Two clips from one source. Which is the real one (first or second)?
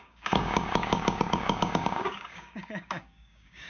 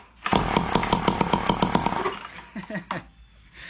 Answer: second